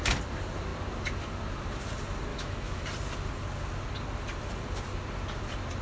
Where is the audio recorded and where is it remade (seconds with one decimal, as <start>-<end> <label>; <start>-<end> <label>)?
0.0-2.3 recorded; 2.3-2.8 remade; 2.8-5.8 recorded